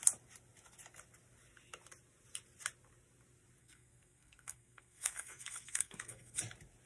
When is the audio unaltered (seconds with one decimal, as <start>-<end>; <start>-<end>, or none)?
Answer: 0.0-3.6; 6.4-6.9